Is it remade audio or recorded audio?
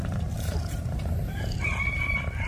remade